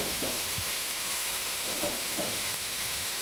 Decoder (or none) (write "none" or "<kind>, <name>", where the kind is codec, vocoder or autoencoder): autoencoder, DAC-VAE